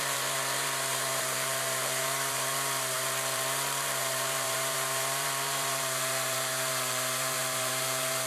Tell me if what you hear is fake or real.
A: fake